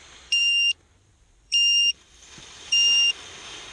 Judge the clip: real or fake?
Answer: fake